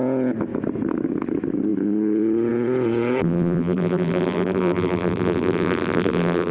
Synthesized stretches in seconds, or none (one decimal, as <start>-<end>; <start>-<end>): 3.2-6.5